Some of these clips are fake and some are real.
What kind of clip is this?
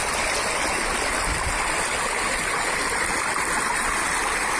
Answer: real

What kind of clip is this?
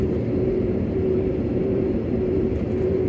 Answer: fake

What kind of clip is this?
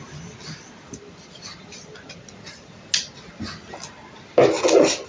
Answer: real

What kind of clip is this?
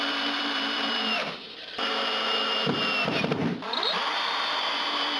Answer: fake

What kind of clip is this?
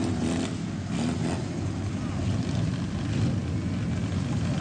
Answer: real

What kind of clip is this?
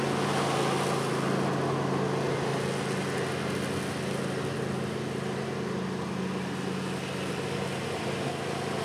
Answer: real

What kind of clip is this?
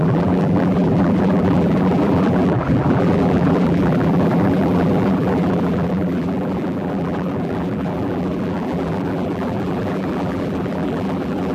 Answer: fake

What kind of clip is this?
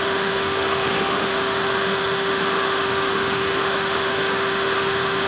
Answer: fake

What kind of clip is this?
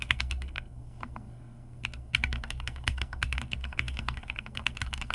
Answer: fake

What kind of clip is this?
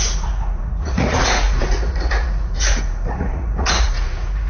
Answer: fake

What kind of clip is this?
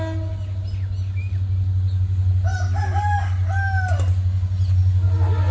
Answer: real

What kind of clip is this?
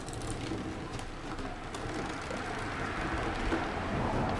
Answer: real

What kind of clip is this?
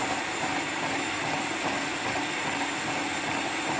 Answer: real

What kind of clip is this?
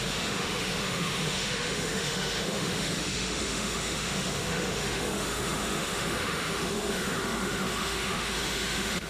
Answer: fake